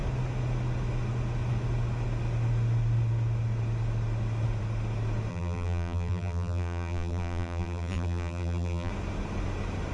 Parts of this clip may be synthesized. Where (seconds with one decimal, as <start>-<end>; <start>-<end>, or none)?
5.3-8.9